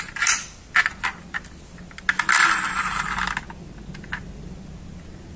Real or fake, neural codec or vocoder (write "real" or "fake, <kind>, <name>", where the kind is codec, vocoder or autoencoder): real